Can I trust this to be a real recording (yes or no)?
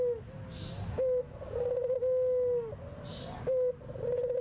yes